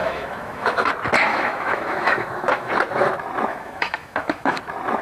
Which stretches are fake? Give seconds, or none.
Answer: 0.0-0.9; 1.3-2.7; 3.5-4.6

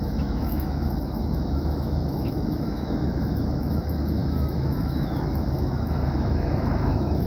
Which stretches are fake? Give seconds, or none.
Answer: 0.0-7.3

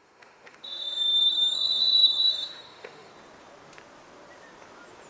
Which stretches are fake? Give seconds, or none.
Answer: 0.0-3.1

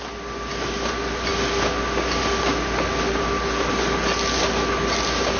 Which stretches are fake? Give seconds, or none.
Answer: none

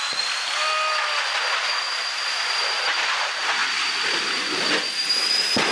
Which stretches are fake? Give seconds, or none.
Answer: none